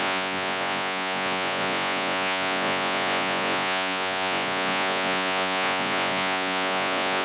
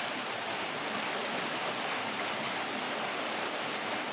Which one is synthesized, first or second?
first